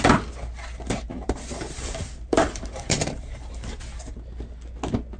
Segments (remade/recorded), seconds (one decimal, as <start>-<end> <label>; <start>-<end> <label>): 0.0-1.1 recorded; 1.1-3.8 remade; 3.8-5.2 recorded